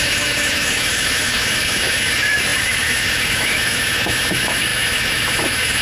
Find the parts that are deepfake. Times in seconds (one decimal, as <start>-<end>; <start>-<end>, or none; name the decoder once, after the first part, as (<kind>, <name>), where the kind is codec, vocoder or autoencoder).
0.0-5.8 (autoencoder, DAC-VAE)